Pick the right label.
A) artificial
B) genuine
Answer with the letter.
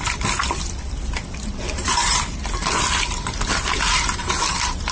A